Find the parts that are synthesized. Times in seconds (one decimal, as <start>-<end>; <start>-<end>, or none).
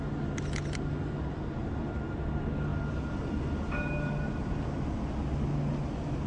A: none